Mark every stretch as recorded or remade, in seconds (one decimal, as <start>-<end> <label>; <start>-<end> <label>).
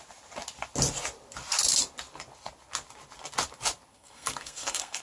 0.0-3.9 recorded; 3.9-5.0 remade